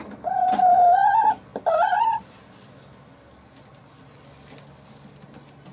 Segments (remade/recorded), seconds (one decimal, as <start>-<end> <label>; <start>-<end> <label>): 0.0-5.7 recorded